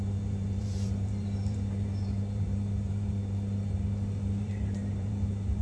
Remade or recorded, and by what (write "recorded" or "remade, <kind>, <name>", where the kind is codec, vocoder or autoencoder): remade, vocoder, BigVGAN v2